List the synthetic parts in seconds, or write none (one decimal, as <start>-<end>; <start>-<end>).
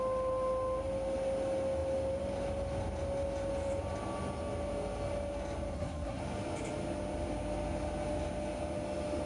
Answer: 5.7-6.2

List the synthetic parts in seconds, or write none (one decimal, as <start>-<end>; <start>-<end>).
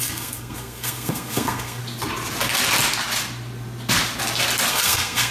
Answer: 0.0-1.8; 4.7-5.3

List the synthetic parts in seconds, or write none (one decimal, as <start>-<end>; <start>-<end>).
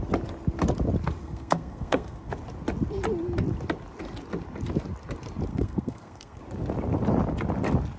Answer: 1.2-2.3; 5.5-6.4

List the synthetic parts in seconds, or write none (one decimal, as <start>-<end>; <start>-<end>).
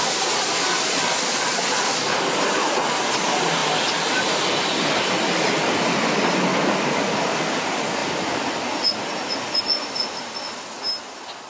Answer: none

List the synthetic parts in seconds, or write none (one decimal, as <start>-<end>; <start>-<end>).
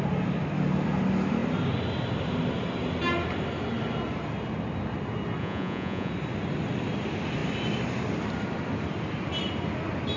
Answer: 5.4-6.1